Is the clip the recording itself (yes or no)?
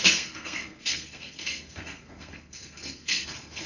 no